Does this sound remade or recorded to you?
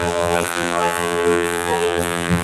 remade